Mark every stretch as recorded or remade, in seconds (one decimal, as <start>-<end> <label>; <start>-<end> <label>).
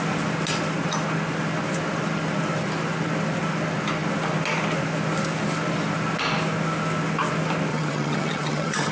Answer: 0.0-7.7 recorded; 7.7-8.9 remade